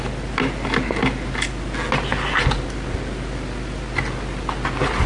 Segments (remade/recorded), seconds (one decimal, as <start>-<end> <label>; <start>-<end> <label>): 0.0-5.1 recorded